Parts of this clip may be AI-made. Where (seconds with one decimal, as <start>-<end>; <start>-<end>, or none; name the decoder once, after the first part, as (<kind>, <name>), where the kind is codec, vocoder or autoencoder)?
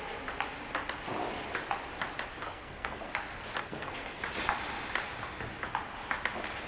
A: 2.4-3.1 (codec, SNAC); 3.6-4.2